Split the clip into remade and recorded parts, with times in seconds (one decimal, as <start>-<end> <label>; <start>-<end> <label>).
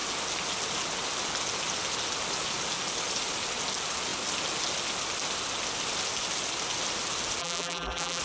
0.0-7.4 recorded; 7.4-8.2 remade